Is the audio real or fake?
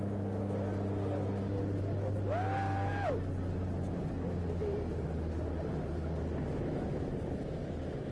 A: real